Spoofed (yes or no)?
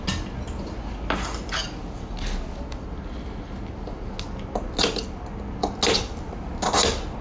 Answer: no